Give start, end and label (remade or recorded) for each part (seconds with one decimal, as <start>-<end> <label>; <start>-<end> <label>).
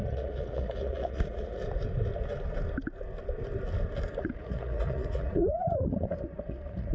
0.0-1.6 remade; 1.6-4.2 recorded; 4.2-6.9 remade